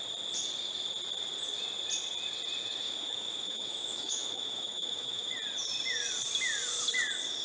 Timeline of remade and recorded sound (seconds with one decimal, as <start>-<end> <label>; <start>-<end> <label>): 0.0-2.6 recorded; 2.6-5.3 remade; 5.3-7.4 recorded

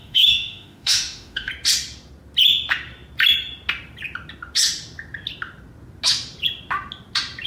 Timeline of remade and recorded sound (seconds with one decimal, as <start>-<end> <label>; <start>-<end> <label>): 0.0-1.5 remade; 1.5-7.5 recorded

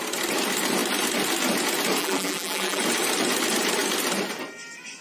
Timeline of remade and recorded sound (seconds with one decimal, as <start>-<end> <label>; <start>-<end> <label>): 0.0-2.0 recorded; 2.0-2.8 remade; 2.8-5.0 recorded